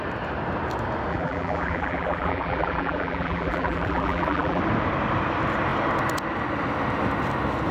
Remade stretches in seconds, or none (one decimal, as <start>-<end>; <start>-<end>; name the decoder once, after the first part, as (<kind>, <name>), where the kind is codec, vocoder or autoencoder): 1.1-4.6 (vocoder, BigVGAN v2)